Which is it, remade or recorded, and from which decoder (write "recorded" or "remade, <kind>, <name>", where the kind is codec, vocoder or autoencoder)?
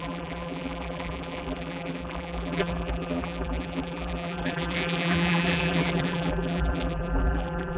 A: remade, vocoder, BigVGAN v2